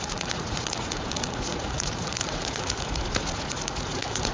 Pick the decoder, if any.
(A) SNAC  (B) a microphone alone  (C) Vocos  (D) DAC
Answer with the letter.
C